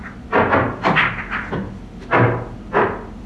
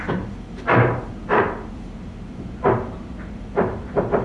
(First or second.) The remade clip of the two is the second